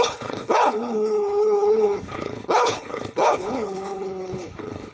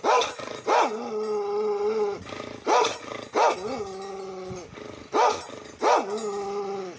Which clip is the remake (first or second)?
first